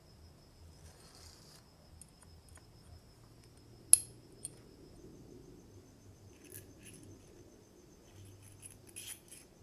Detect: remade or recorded recorded